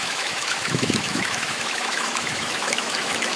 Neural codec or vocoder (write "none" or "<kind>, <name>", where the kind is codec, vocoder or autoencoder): autoencoder, DAC-VAE